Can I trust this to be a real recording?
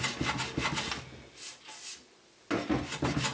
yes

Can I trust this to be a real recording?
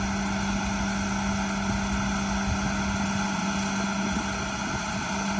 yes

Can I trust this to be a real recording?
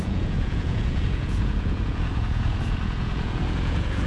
no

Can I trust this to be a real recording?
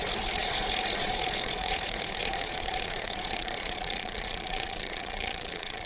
no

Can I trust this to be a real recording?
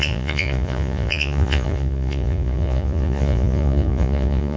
no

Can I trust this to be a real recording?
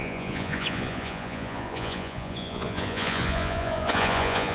no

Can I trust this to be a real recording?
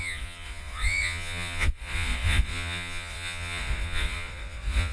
no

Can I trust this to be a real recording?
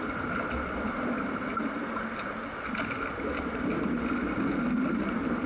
yes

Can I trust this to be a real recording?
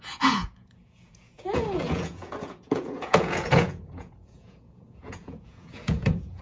no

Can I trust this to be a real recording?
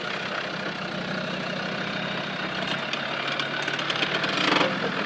yes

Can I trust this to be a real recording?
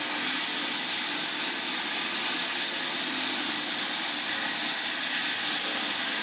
yes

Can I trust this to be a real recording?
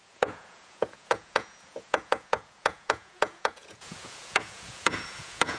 no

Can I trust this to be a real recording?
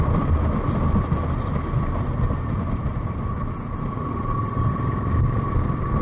yes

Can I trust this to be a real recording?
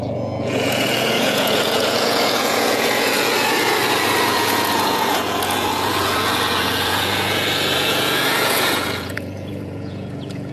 no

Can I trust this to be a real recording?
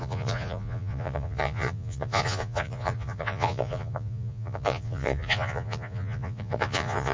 no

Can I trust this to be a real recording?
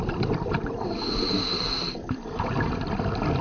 yes